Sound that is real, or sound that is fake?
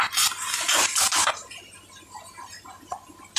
real